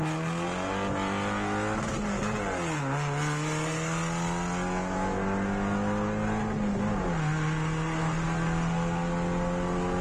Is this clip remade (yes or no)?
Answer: no